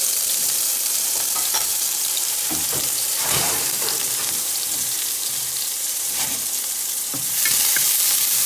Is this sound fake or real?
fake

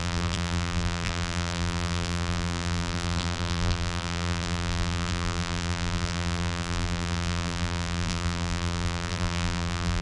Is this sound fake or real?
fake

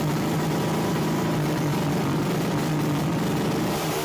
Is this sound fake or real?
fake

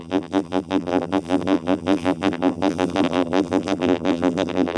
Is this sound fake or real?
fake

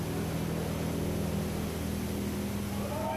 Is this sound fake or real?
real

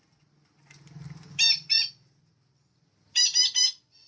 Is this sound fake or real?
real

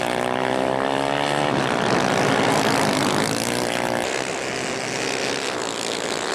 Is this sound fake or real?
real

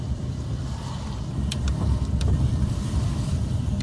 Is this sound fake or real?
fake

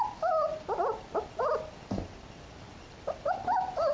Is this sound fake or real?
real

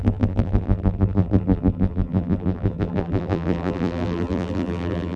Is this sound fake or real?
fake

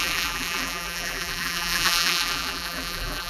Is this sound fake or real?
fake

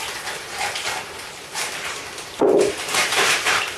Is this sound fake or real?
fake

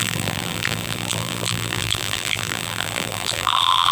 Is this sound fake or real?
fake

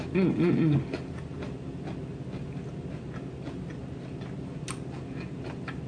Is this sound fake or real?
real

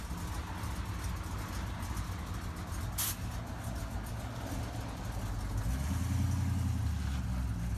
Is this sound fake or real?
real